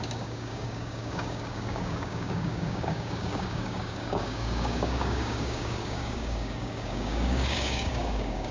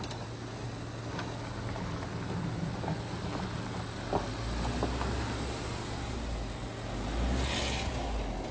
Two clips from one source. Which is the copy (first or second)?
first